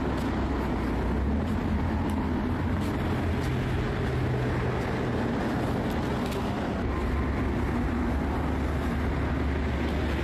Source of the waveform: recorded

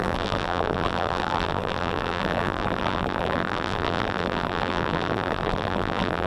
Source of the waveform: remade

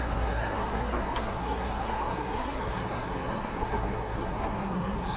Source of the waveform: remade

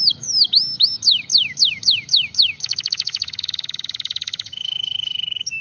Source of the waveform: remade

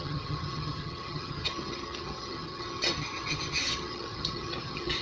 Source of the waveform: remade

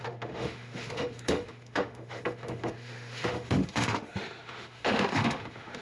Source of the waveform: remade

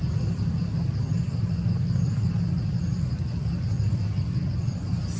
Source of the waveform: recorded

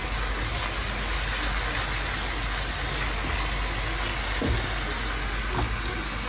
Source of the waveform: recorded